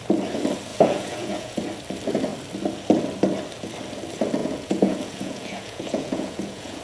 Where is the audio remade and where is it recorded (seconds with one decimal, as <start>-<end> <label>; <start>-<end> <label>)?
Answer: 0.0-0.7 recorded; 0.7-1.6 remade; 1.6-4.4 recorded; 4.4-6.8 remade